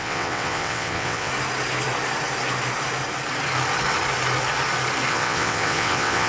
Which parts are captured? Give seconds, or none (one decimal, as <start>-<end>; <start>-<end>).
1.3-5.1